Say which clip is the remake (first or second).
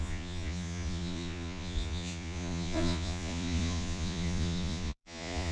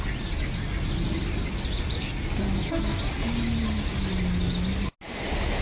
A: first